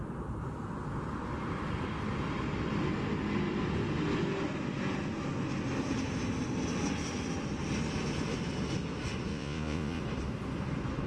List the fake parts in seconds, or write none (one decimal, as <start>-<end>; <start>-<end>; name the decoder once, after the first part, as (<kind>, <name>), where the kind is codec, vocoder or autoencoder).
9.3-10.0 (vocoder, Vocos)